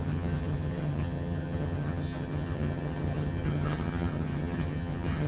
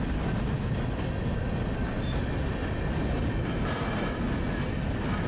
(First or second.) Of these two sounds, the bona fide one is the second